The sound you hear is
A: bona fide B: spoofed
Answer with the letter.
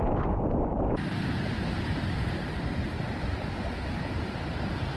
A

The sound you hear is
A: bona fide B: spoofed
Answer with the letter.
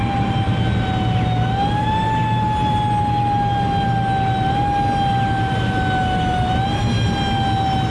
A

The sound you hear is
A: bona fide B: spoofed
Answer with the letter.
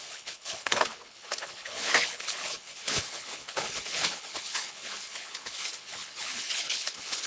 B